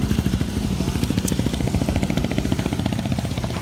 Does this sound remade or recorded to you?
remade